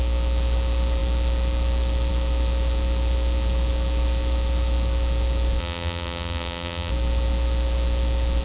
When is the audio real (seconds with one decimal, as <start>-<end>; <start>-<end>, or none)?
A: 0.0-5.6; 6.9-8.4